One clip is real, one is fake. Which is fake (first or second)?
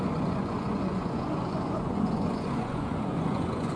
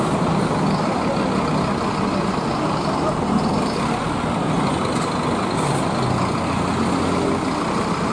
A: first